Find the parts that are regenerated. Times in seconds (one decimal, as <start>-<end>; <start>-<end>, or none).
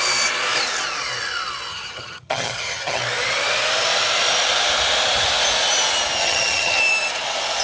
1.7-3.0; 6.2-6.8